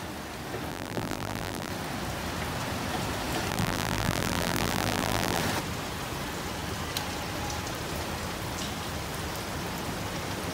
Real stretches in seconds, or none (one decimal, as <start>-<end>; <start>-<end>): 0.0-0.7; 1.7-3.5; 5.4-10.5